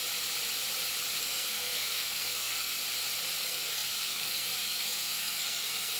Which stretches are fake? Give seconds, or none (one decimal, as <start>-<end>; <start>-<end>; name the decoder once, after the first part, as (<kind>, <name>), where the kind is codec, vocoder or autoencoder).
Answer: 1.2-2.8 (codec, SNAC); 3.4-6.0